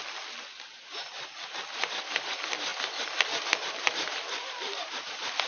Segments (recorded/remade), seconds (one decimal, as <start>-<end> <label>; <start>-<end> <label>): 0.0-5.5 recorded